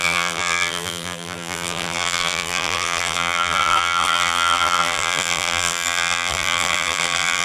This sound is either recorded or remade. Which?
remade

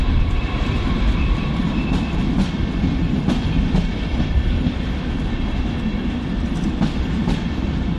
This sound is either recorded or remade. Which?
remade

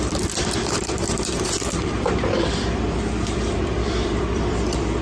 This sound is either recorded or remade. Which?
remade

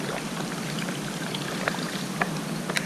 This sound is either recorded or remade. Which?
remade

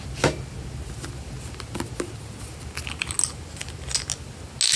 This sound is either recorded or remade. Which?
recorded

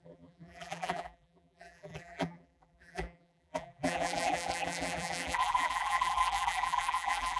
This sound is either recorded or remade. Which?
remade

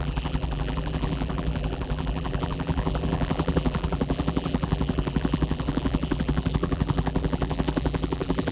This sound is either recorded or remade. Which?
remade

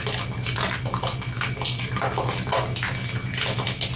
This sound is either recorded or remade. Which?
recorded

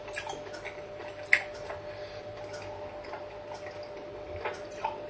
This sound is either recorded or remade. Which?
recorded